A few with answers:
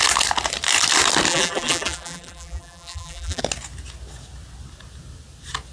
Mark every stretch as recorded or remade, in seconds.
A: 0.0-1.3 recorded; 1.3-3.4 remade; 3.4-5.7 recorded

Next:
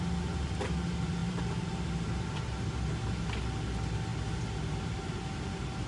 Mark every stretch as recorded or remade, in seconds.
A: 0.0-1.2 recorded; 1.2-2.2 remade; 2.2-5.9 recorded

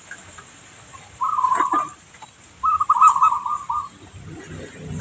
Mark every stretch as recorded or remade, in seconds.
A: 0.0-2.5 remade; 2.5-5.0 recorded

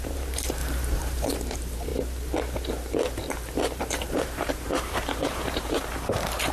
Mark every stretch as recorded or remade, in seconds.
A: 0.0-1.9 remade; 1.9-3.8 recorded; 3.8-6.5 remade

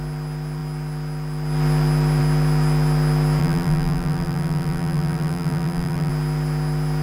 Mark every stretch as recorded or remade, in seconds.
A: 0.0-3.4 recorded; 3.4-6.1 remade; 6.1-7.0 recorded

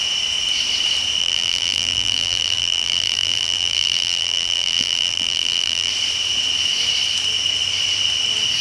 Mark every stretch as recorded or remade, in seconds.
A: 0.0-1.2 recorded; 1.2-5.9 remade; 5.9-8.6 recorded

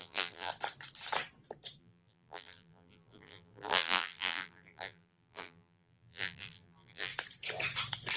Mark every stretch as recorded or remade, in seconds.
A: 0.0-0.5 remade; 0.5-1.8 recorded; 1.8-7.1 remade; 7.1-8.2 recorded